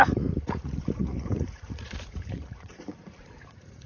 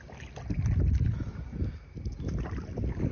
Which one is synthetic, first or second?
first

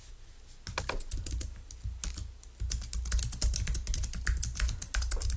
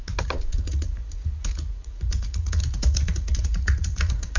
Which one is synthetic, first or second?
second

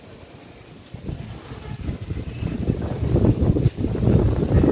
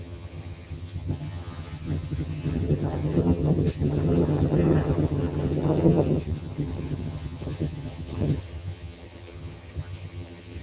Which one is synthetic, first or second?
second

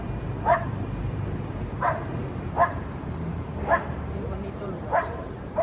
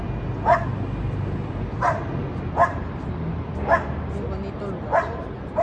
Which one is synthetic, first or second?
first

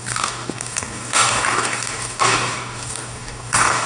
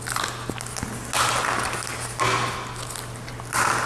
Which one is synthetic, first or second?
first